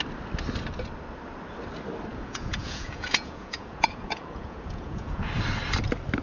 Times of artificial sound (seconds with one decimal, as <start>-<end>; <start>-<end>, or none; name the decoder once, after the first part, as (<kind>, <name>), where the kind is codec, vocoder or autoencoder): 2.1-5.3 (vocoder, Vocos)